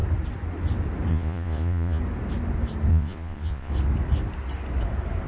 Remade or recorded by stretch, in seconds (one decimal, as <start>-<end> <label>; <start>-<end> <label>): 0.0-1.1 recorded; 1.1-2.0 remade; 2.0-2.9 recorded; 2.9-3.7 remade; 3.7-5.3 recorded